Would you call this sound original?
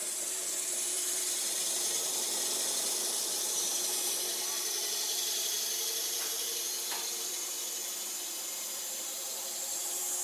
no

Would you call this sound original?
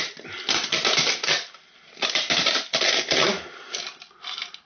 no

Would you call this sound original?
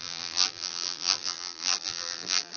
no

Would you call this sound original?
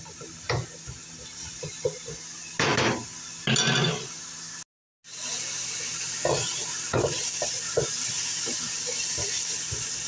yes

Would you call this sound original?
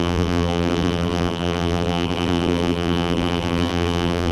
no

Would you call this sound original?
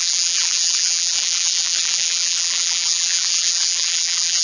no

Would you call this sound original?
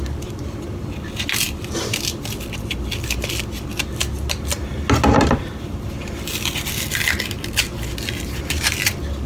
yes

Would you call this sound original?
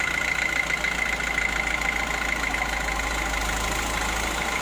yes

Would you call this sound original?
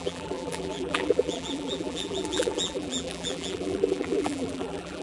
no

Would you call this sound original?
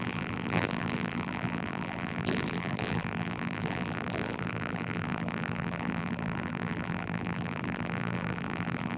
no